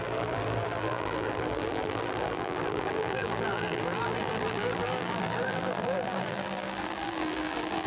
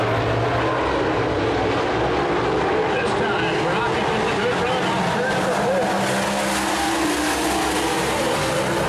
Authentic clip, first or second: second